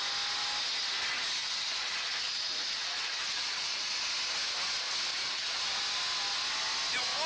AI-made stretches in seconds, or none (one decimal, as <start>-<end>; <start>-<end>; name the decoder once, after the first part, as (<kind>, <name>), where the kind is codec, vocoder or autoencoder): 1.4-3.9 (vocoder, Vocos); 5.1-5.6